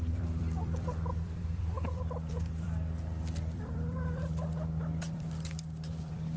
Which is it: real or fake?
fake